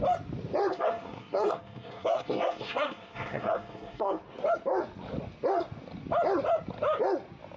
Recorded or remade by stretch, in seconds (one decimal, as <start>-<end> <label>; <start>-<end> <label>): 0.0-0.7 recorded; 0.7-4.2 remade; 4.2-7.6 recorded